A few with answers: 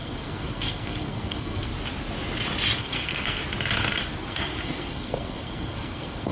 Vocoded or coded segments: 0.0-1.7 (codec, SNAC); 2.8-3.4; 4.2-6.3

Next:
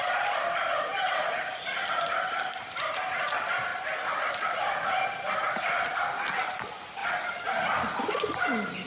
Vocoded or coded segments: none

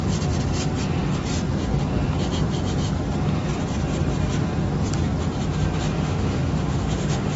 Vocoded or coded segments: 5.9-7.4 (autoencoder, DAC-VAE)

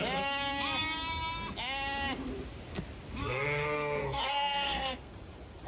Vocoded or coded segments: 3.2-5.1 (codec, SNAC)

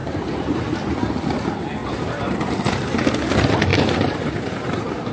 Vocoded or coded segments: 0.0-0.6 (vocoder, BigVGAN v2); 1.8-2.7; 3.7-5.1

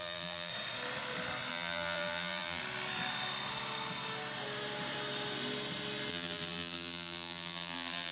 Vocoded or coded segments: 0.0-0.5 (vocoder, BigVGAN v2); 1.5-2.6; 6.1-8.1

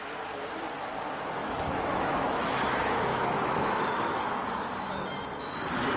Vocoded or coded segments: 1.4-4.9 (autoencoder, DAC-VAE)